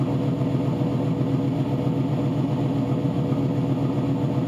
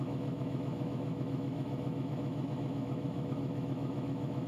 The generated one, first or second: second